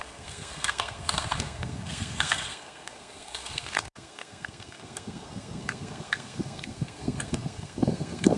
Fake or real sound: fake